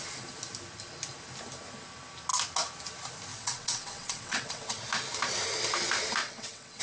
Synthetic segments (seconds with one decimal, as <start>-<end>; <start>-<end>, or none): 3.3-4.8; 6.2-6.8